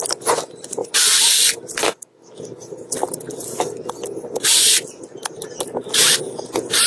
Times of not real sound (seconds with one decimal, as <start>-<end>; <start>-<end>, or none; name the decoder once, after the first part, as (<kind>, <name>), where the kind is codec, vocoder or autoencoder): none